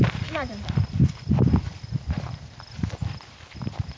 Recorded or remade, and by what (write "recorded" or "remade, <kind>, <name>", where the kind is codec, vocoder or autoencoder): remade, vocoder, BigVGAN v2